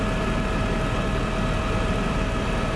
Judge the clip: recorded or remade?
remade